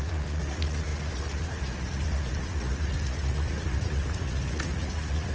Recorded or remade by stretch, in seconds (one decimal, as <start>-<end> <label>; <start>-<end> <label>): 0.0-5.3 remade